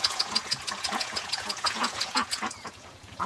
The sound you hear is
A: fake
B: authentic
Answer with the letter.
A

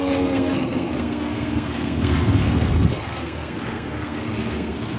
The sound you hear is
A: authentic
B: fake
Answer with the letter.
B